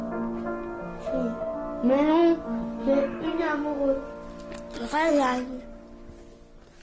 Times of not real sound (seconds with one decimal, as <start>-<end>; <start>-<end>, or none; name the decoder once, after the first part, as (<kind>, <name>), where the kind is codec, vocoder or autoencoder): none